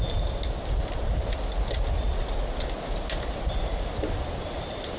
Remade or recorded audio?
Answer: recorded